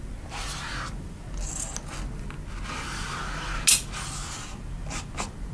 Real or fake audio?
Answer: real